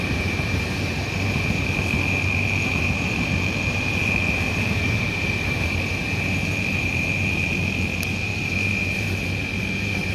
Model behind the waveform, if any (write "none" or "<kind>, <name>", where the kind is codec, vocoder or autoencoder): vocoder, BigVGAN v2